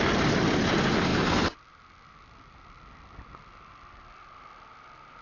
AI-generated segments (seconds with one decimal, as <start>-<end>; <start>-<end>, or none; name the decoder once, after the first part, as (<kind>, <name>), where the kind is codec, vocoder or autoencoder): none